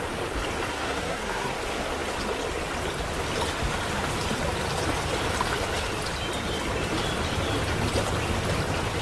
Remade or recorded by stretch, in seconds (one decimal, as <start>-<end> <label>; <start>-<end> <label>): 0.0-0.7 recorded; 0.7-1.5 remade; 1.5-9.0 recorded